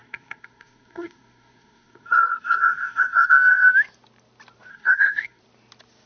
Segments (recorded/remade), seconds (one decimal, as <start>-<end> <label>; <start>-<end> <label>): 0.0-3.7 remade; 3.7-4.7 recorded; 4.7-5.4 remade; 5.4-6.1 recorded